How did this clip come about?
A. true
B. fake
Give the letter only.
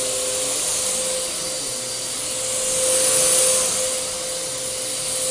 A